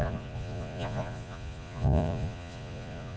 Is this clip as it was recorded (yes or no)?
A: no